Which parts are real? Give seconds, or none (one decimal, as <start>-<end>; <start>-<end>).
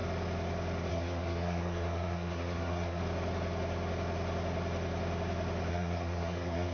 0.0-0.9; 3.0-5.7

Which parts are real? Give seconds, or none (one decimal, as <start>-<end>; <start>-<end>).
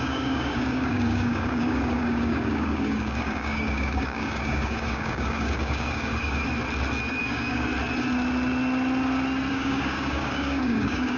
6.4-7.2; 7.7-9.5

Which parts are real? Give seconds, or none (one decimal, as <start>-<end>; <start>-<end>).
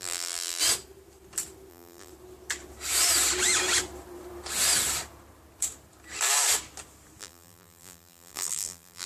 0.6-1.7; 2.1-7.2